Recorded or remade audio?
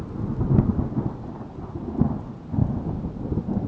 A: recorded